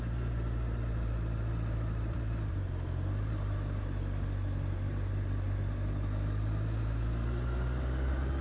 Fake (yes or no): no